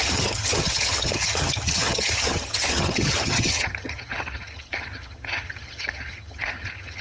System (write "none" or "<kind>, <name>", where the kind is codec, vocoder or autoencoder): vocoder, HiFi-GAN